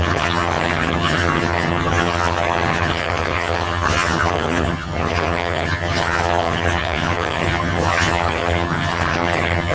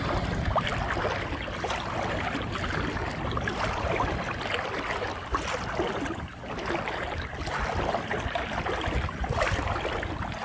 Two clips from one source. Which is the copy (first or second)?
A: first